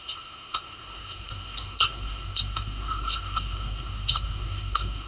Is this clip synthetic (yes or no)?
yes